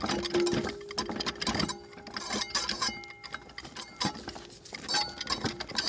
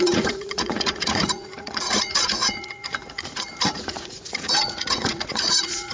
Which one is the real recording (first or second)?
first